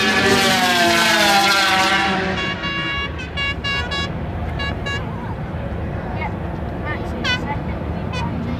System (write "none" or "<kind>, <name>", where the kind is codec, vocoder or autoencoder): vocoder, BigVGAN v2